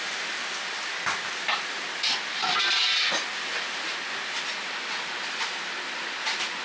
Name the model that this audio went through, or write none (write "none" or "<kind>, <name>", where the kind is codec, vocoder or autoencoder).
none